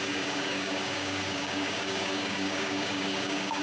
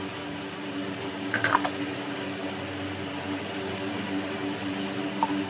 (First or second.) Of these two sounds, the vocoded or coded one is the first